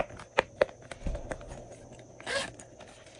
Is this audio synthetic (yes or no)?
no